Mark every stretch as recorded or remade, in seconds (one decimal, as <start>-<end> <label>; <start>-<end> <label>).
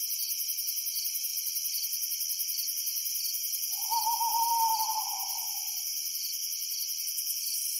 0.0-7.8 recorded